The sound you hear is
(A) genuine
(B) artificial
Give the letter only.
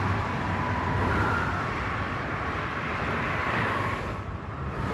B